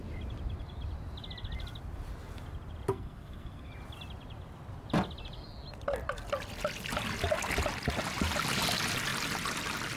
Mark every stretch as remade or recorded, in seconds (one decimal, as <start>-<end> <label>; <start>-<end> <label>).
0.0-2.9 recorded; 2.9-3.7 remade; 3.7-10.0 recorded